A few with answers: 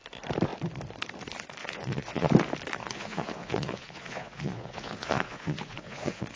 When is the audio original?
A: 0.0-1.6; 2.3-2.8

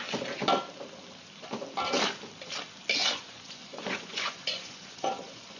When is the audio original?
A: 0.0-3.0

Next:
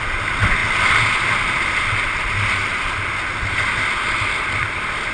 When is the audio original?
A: 0.0-5.1